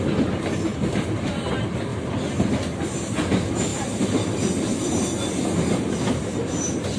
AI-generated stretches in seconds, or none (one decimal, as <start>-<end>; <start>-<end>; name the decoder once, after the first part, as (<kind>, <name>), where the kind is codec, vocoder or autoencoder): none